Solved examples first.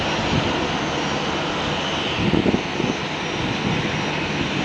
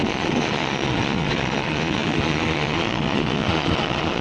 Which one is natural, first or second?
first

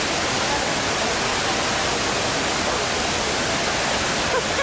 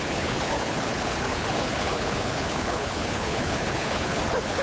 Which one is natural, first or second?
first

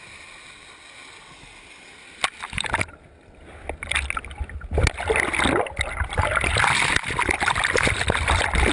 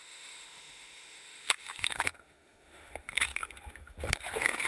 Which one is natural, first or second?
first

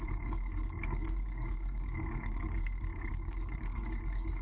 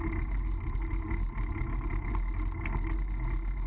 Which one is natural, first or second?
second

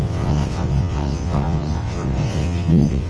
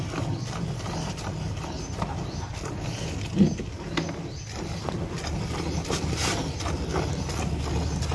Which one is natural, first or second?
second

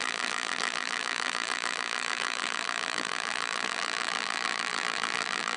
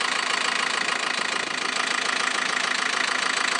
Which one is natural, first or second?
second